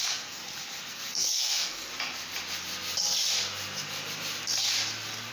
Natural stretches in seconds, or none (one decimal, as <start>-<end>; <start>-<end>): 0.4-0.9; 1.9-5.3